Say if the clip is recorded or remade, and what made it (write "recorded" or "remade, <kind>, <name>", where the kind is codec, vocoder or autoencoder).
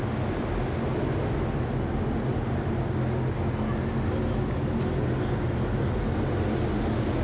recorded